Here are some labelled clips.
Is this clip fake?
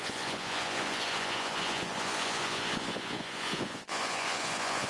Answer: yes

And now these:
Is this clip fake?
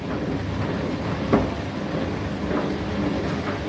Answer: no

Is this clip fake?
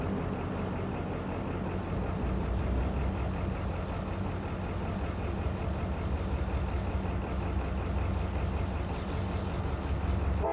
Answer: no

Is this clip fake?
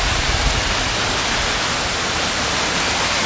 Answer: no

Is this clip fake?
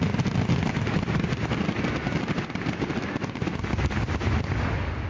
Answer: no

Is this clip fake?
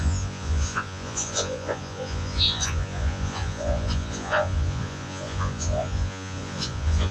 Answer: yes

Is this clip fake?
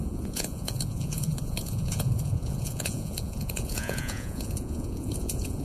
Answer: yes